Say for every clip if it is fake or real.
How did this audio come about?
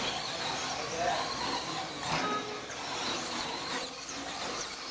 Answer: real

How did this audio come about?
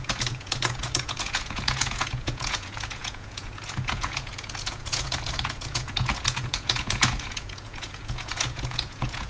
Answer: fake